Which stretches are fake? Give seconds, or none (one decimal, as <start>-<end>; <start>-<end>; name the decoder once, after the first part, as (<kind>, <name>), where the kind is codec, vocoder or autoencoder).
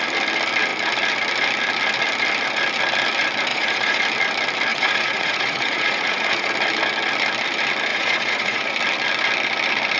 3.5-4.0 (vocoder, Vocos); 4.7-6.5; 7.9-8.7